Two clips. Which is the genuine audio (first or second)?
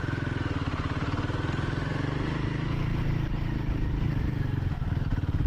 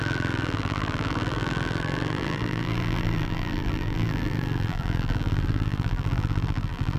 first